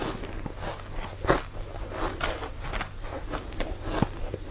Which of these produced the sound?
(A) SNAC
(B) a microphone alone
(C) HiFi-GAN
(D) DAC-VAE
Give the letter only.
B